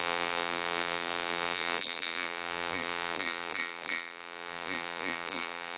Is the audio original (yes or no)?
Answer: no